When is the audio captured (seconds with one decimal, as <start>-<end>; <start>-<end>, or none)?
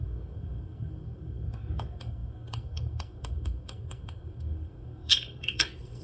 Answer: none